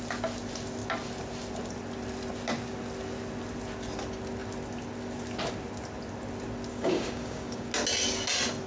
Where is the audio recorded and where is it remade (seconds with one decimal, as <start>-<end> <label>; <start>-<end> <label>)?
0.0-6.7 recorded; 6.7-7.7 remade; 7.7-8.7 recorded